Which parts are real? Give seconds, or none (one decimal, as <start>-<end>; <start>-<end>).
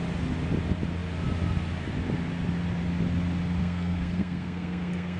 0.0-3.6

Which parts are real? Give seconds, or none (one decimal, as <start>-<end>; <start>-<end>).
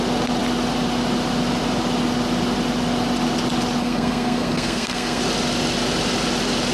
0.0-3.8; 5.2-6.7